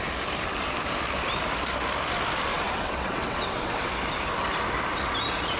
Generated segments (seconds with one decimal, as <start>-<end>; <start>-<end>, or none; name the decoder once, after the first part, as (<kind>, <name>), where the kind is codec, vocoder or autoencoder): 2.5-3.9 (vocoder, WaveNeXt)